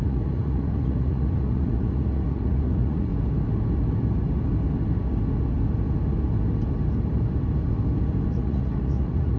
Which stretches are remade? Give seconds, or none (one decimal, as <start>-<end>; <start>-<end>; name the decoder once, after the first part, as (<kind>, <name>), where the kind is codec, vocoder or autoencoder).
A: 0.0-3.1 (vocoder, Vocos); 8.3-9.4